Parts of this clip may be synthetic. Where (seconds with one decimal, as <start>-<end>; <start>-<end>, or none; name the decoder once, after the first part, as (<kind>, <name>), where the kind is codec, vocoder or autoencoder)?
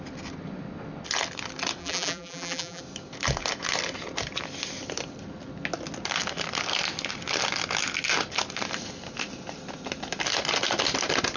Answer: 1.8-2.8 (vocoder, BigVGAN v2)